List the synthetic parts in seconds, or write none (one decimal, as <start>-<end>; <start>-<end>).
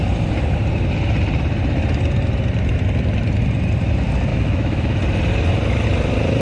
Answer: 4.3-5.0